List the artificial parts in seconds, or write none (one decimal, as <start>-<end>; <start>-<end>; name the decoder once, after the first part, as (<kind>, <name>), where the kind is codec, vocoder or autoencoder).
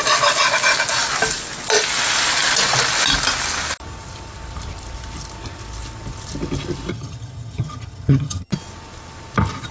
6.9-8.5 (vocoder, HiFi-GAN)